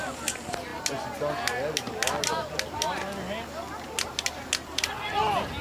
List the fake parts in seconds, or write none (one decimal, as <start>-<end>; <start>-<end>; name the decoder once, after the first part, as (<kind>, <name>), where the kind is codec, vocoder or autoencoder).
none